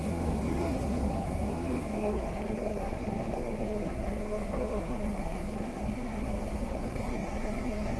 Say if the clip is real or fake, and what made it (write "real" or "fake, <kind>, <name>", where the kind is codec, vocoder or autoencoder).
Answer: fake, codec, SNAC